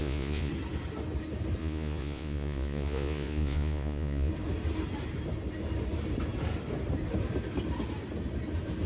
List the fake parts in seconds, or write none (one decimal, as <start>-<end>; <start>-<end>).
0.0-0.5; 1.6-4.3